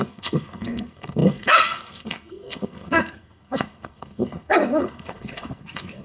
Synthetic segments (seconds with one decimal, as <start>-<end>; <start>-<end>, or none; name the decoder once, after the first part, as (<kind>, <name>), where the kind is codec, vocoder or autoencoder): 0.0-6.0 (codec, SNAC)